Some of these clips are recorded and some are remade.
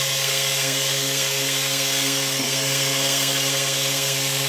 remade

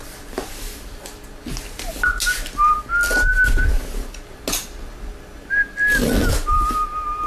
recorded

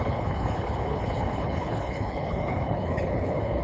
remade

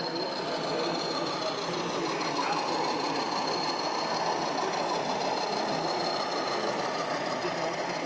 recorded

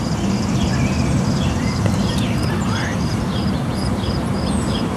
remade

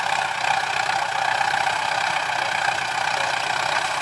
recorded